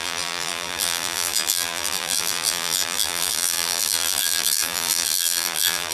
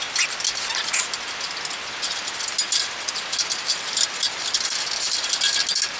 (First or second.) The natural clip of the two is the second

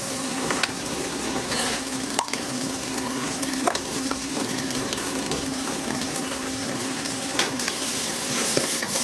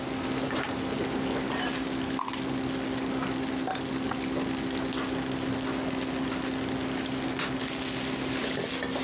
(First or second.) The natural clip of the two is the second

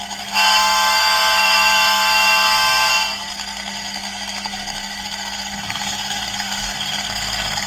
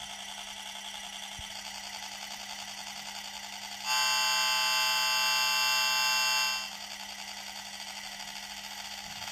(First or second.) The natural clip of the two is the second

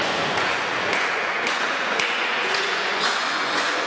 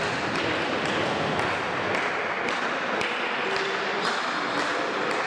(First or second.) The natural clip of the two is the second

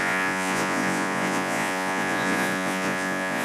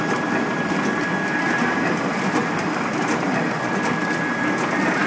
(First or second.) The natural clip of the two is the second